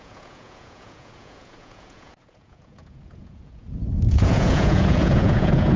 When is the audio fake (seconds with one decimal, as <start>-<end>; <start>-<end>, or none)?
0.0-5.8